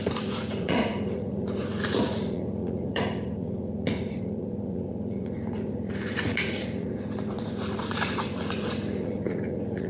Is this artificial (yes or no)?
yes